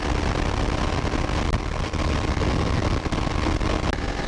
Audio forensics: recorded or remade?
recorded